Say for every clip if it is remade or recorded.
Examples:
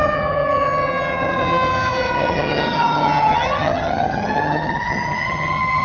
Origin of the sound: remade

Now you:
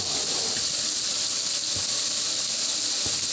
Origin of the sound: recorded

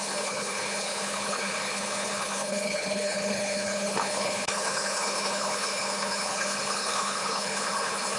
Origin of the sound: remade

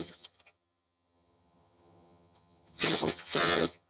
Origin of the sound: remade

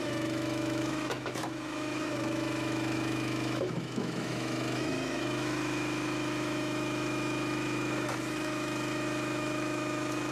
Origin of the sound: remade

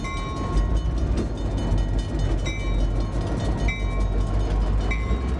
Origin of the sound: recorded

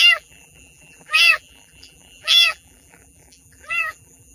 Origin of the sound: remade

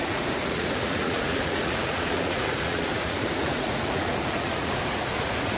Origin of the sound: remade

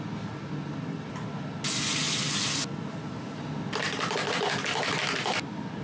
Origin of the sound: recorded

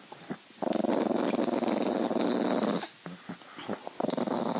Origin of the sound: recorded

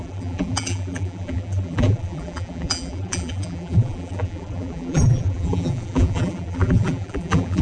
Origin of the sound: remade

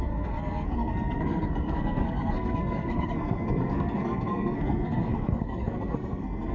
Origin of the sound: remade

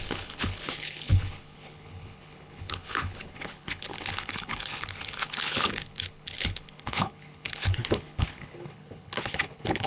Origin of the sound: remade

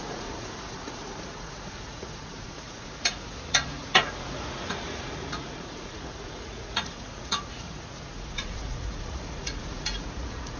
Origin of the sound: remade